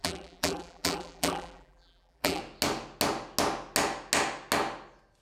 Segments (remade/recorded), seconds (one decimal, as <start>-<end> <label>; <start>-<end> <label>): 0.0-2.4 remade; 2.4-5.2 recorded